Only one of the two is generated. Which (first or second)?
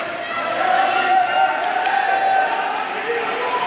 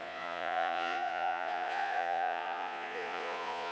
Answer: second